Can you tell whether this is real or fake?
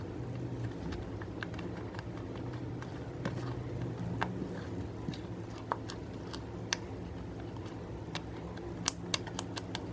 real